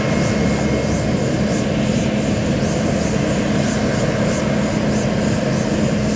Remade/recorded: recorded